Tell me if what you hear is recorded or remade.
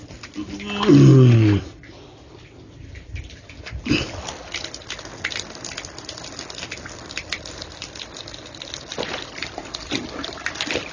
recorded